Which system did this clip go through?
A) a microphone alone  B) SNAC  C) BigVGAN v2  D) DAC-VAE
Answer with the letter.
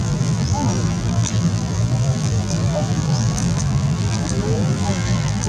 C